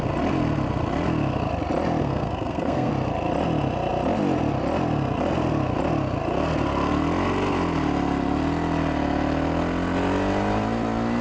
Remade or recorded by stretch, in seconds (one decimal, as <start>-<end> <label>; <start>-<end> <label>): 0.0-2.0 recorded; 2.0-2.9 remade; 2.9-11.2 recorded